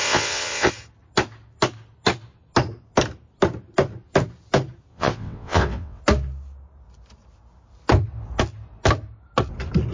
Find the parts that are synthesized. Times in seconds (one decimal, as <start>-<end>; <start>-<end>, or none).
0.0-0.7; 4.9-6.0